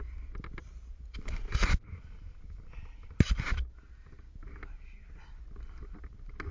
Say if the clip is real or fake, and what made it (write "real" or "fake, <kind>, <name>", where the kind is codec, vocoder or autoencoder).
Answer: real